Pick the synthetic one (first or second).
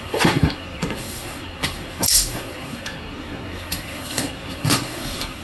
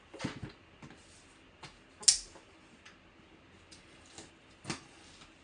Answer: first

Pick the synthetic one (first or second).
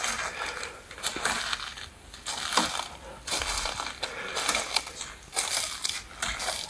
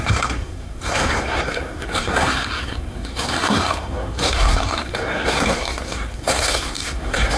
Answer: second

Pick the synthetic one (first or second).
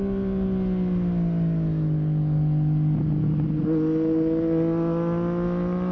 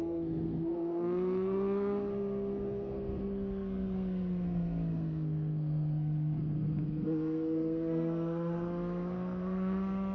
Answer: second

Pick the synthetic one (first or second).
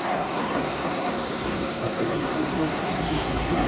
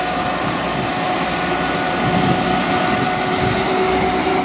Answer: first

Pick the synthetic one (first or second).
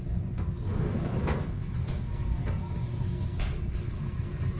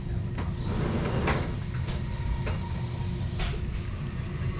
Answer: first